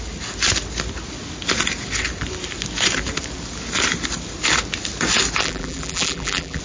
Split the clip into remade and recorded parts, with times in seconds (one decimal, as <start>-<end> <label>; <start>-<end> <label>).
0.0-5.4 recorded; 5.4-6.6 remade